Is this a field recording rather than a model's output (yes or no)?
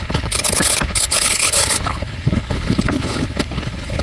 no